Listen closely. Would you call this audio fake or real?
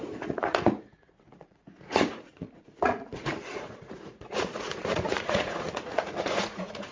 fake